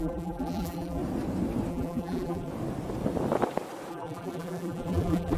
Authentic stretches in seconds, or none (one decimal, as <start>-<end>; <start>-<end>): 1.0-1.7; 2.5-3.9